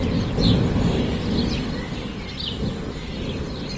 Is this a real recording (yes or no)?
yes